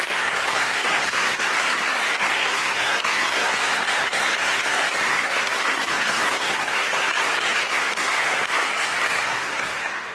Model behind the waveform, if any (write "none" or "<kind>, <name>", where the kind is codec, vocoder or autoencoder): codec, SNAC